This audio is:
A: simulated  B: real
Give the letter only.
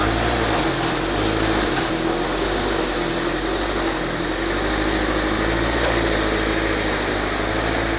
B